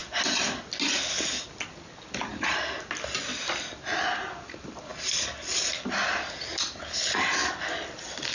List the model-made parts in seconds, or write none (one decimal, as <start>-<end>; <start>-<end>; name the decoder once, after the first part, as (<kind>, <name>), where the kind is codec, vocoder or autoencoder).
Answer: none